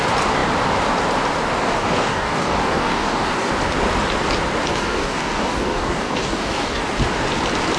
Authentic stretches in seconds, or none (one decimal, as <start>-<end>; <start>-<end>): 0.0-1.6; 3.5-4.7; 6.8-7.8